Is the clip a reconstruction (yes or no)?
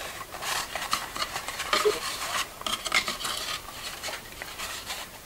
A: yes